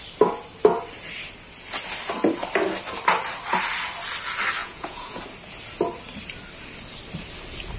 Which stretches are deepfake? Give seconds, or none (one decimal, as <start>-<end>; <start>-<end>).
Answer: 4.6-5.2